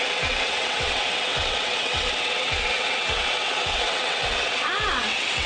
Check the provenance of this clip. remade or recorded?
remade